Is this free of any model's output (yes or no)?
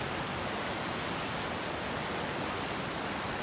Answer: yes